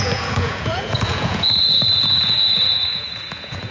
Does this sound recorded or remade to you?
remade